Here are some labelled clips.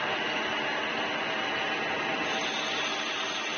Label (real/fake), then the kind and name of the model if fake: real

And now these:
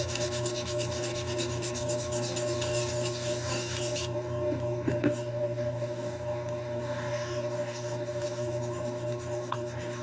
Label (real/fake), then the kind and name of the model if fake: fake, codec, DAC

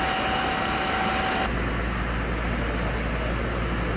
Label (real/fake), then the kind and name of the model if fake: real